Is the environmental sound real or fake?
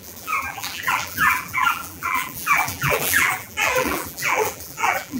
fake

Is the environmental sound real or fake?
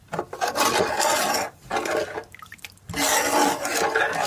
real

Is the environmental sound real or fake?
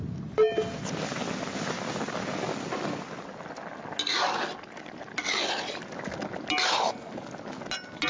real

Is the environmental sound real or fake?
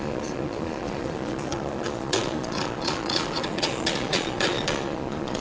fake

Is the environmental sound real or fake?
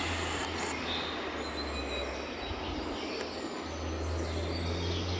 real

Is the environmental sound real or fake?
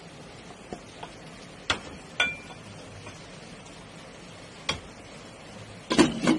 real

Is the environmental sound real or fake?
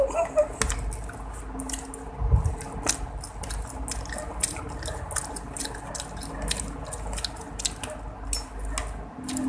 real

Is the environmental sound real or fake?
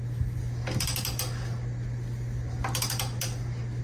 real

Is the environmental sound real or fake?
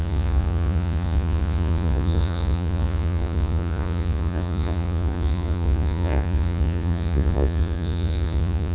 fake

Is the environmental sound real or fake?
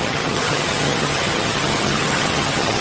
fake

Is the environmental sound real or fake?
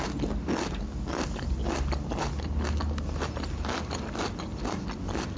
real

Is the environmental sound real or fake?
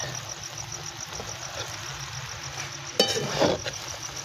real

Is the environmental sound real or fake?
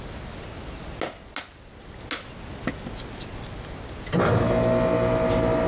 real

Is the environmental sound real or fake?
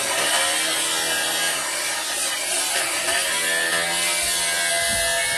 real